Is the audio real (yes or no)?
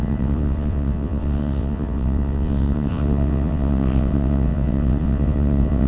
no